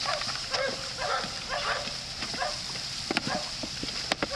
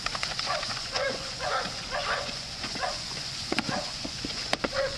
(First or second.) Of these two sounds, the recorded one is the first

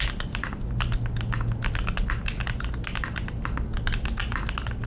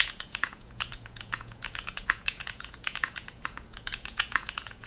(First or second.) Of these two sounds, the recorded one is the first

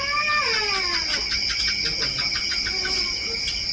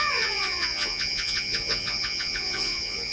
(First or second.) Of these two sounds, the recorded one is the first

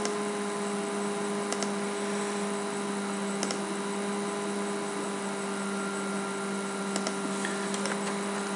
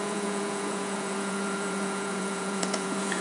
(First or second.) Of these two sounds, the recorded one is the first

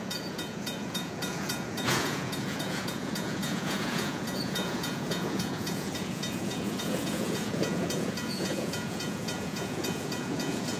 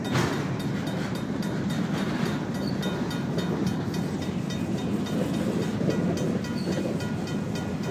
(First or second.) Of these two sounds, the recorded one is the second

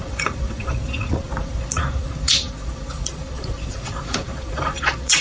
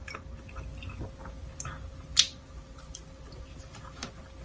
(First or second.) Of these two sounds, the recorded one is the second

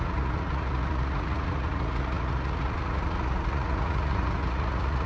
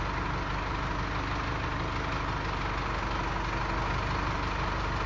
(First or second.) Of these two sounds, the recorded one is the second